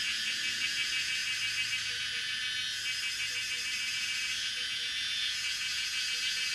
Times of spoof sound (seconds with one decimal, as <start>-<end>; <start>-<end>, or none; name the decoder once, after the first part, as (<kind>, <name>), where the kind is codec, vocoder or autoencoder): 0.0-1.2 (vocoder, Vocos); 1.8-2.4; 3.9-6.5